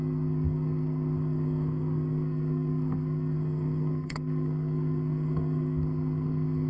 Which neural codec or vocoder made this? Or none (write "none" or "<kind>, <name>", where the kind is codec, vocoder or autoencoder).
codec, SNAC